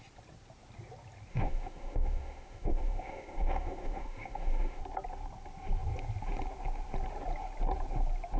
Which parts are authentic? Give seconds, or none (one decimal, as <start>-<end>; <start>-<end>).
0.0-1.3; 4.8-8.4